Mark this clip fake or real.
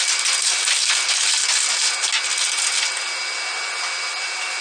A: real